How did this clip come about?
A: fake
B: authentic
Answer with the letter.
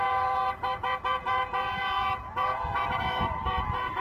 A